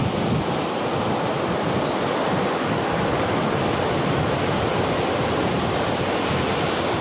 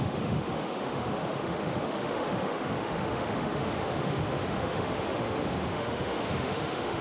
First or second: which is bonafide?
first